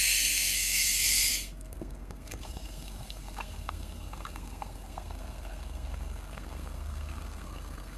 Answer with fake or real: fake